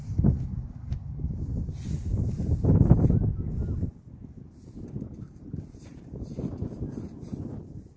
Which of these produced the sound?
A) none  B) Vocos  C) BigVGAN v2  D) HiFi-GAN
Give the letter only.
A